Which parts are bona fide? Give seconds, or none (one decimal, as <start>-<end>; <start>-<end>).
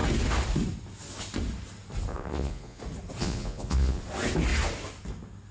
0.0-2.1; 2.8-3.2; 4.0-5.5